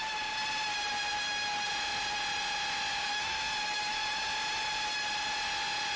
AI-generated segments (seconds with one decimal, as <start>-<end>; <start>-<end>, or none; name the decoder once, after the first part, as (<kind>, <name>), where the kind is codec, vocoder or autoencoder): 2.9-4.2 (autoencoder, DAC-VAE)